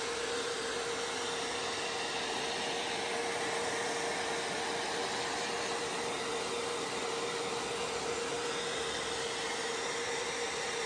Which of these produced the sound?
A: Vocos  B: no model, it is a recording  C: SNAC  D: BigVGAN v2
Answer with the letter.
B